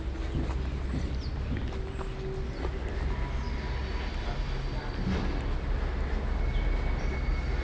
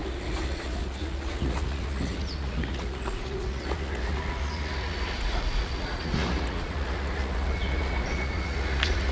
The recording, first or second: first